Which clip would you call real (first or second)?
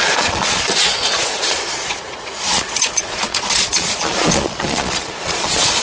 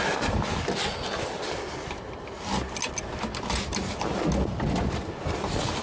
second